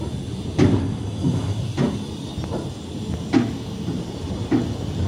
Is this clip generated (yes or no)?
no